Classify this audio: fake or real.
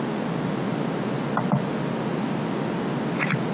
real